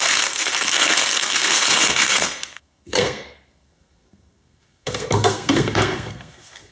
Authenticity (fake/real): fake